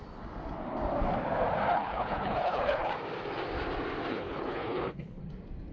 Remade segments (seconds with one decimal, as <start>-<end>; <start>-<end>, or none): 1.7-2.9; 4.1-5.2